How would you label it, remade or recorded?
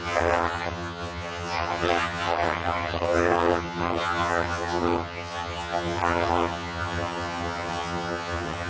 remade